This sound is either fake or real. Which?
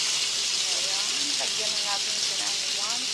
real